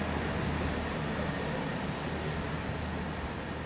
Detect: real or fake real